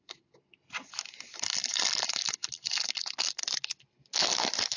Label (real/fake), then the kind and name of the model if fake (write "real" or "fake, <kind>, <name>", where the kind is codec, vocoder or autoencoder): real